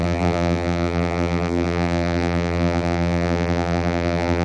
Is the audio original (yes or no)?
no